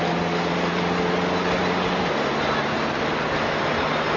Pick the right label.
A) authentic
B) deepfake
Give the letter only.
A